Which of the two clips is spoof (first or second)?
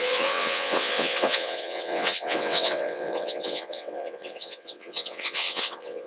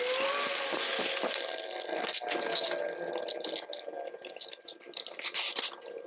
first